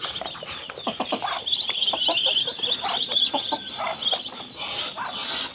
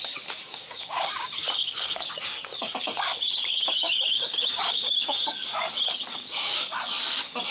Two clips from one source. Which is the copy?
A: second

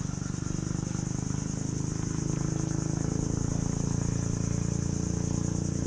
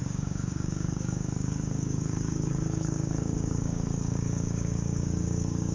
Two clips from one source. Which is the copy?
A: second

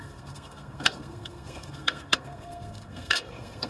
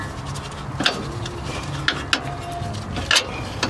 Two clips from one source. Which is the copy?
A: first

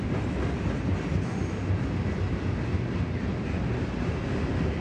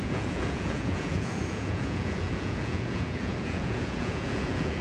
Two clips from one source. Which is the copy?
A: second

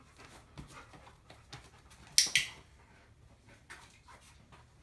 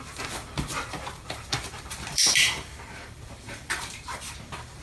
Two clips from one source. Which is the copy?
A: second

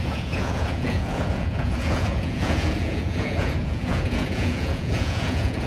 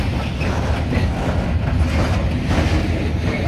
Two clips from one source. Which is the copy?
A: first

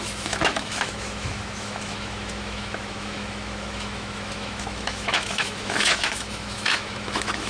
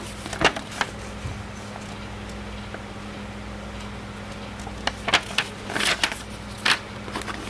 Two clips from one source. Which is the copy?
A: first